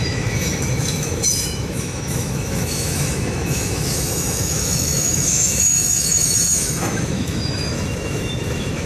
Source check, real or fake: fake